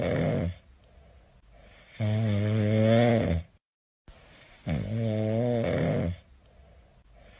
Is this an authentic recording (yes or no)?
yes